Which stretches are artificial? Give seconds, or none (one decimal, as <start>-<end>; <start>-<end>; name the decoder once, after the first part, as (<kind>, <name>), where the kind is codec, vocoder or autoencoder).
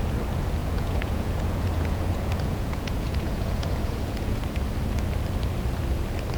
0.6-4.4 (vocoder, Vocos)